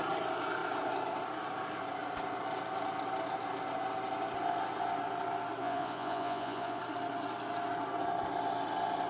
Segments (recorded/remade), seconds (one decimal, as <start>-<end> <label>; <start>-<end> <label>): 0.0-5.6 recorded; 5.6-6.8 remade; 6.8-9.1 recorded